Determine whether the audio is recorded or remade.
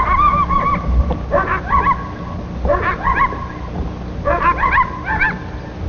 recorded